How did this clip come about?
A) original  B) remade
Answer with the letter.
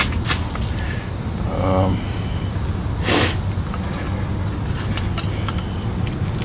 A